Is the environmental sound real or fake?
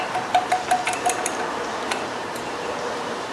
fake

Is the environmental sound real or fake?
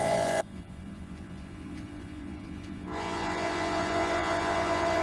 fake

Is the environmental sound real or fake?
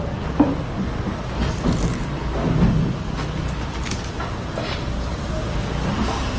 real